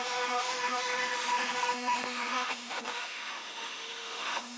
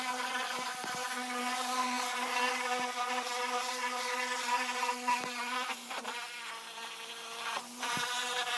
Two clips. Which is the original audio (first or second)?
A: second